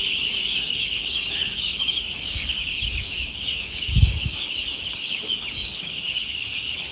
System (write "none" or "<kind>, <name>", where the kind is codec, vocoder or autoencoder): codec, DAC